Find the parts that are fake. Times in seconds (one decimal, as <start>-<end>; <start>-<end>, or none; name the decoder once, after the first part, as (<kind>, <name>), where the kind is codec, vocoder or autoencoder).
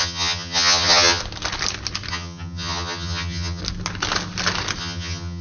0.0-1.2 (vocoder, HiFi-GAN); 2.1-3.6; 4.8-5.4